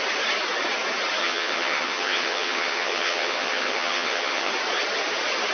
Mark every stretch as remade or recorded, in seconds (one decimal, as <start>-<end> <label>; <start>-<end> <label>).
0.0-1.2 recorded; 1.2-4.5 remade; 4.5-5.5 recorded